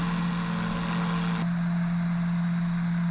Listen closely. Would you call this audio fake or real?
real